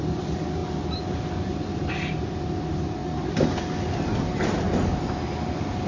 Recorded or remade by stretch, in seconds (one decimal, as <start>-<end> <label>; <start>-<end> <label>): 0.0-0.6 recorded; 0.6-1.9 remade; 1.9-5.9 recorded